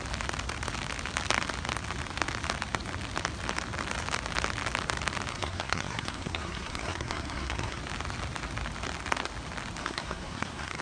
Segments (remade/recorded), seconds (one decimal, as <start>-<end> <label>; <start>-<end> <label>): 0.0-5.3 recorded; 5.3-7.8 remade; 7.8-9.8 recorded; 9.8-10.8 remade